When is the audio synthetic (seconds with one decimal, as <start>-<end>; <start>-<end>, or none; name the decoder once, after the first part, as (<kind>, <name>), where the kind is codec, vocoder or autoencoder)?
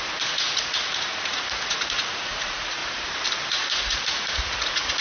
0.0-2.8 (vocoder, Vocos); 3.5-5.0